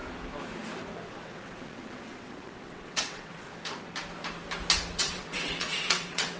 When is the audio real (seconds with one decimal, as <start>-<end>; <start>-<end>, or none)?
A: 0.0-1.1; 3.5-5.0